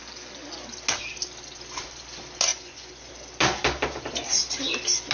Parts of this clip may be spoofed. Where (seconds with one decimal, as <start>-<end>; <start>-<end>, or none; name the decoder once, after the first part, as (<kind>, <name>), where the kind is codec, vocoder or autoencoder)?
2.5-3.1 (vocoder, Vocos)